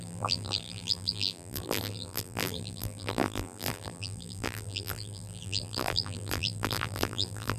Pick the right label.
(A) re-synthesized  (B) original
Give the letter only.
A